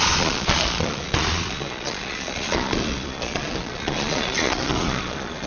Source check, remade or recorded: remade